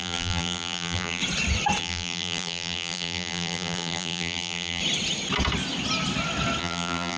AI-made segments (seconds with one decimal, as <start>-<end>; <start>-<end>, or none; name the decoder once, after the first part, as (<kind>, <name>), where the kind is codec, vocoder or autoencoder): 0.0-1.2 (vocoder, BigVGAN v2); 1.8-4.8; 6.6-7.2